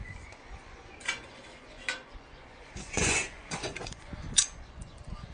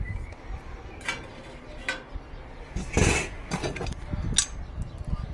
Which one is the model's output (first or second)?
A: first